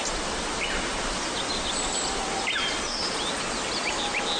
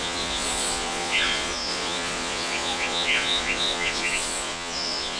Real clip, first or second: first